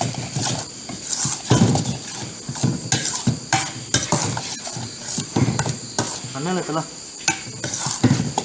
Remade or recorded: recorded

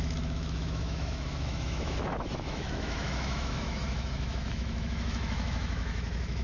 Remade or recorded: remade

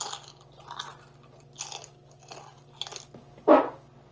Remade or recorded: recorded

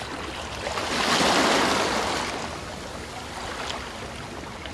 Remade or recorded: recorded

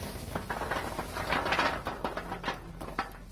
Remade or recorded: recorded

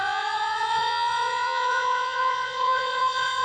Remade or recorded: remade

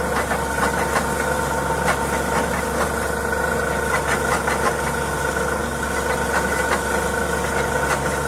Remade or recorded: recorded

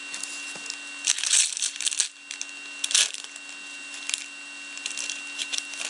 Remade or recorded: recorded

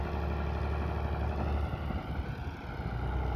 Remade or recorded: recorded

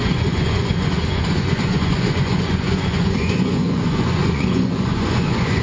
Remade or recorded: remade